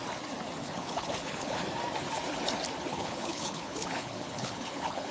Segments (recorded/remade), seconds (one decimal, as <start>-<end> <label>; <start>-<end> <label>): 0.0-0.6 recorded; 0.6-1.6 remade; 1.6-2.9 recorded; 2.9-5.1 remade